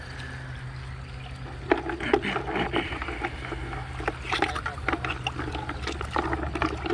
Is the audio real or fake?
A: real